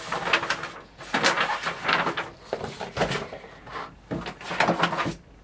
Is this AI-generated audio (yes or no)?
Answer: no